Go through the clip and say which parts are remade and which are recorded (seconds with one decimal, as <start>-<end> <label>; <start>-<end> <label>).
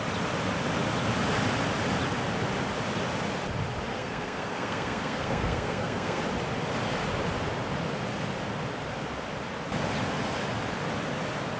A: 0.0-3.9 recorded; 3.9-6.2 remade; 6.2-11.6 recorded